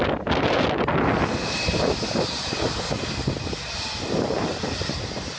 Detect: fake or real real